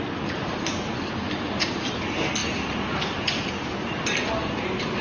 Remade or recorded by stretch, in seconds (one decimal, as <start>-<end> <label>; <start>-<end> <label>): 0.0-5.0 recorded